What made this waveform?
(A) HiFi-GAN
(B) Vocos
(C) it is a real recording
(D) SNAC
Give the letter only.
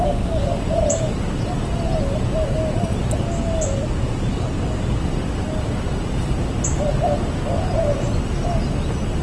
C